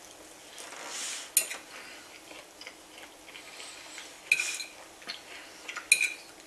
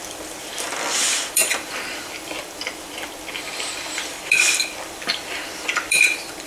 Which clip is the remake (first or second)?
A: second